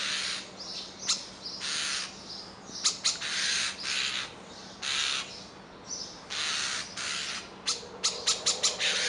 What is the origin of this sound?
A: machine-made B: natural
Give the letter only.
B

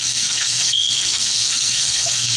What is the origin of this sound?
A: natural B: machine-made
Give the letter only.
B